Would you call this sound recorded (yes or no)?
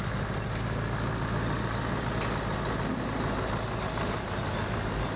yes